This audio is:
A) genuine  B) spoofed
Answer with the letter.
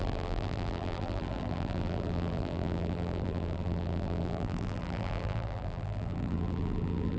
B